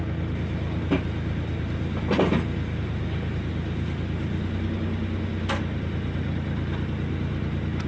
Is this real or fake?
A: real